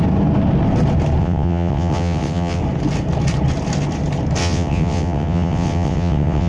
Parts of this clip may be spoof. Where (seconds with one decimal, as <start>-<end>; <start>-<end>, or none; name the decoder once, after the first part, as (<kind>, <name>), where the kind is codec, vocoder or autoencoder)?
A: 1.2-2.6 (vocoder, WaveNeXt); 4.4-6.5